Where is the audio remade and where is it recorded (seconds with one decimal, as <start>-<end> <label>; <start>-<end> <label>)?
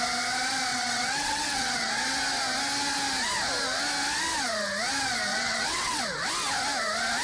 0.0-0.7 recorded; 0.7-2.0 remade; 2.0-5.3 recorded; 5.3-6.0 remade; 6.0-7.2 recorded